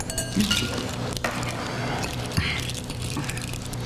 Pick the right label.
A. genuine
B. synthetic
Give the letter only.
A